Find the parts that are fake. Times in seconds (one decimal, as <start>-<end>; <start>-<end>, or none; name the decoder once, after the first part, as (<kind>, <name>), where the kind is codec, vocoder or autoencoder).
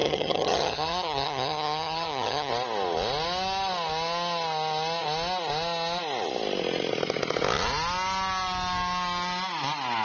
0.0-2.5 (vocoder, HiFi-GAN)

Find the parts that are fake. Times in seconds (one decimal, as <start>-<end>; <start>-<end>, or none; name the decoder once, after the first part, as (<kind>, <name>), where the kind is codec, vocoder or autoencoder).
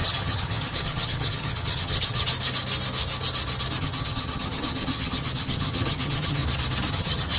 0.0-2.3 (vocoder, HiFi-GAN); 3.8-6.4; 6.9-7.4